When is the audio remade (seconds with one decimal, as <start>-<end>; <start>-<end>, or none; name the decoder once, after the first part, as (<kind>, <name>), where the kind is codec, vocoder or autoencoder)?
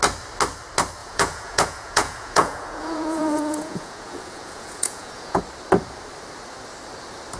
1.0-5.4 (vocoder, Vocos)